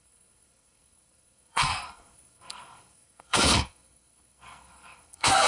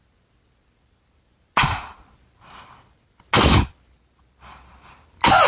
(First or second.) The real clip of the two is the second